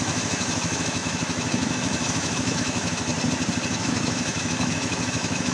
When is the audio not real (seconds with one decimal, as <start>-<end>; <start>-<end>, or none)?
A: 0.0-3.1; 3.7-5.5